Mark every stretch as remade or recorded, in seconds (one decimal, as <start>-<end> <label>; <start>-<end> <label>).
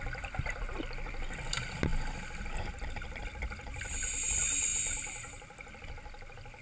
0.0-6.6 recorded